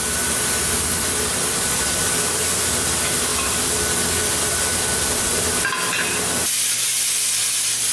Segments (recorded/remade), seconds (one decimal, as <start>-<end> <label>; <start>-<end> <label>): 0.0-7.9 recorded